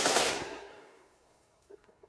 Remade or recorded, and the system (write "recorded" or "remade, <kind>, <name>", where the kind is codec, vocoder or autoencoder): remade, codec, SNAC